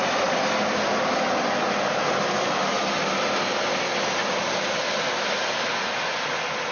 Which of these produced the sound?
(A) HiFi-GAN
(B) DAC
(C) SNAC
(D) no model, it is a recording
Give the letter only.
D